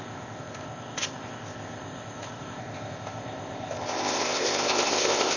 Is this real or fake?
fake